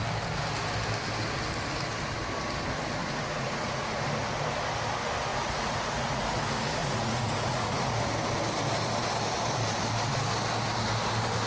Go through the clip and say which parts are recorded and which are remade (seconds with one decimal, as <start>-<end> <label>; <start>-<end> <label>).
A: 0.0-3.0 recorded; 3.0-3.9 remade; 3.9-5.3 recorded; 5.3-6.2 remade; 6.2-6.8 recorded; 6.8-8.1 remade; 8.1-11.5 recorded